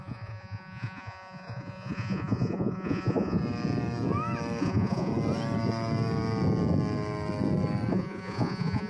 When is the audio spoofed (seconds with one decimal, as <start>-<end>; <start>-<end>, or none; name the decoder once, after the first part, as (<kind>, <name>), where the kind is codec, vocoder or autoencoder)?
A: 0.0-3.4 (vocoder, Vocos); 4.6-5.1; 7.9-8.9